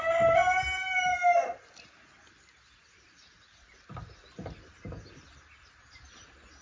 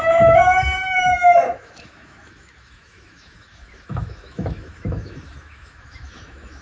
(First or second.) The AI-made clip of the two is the second